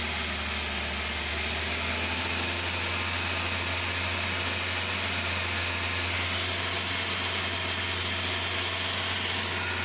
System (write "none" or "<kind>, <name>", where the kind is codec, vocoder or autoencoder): none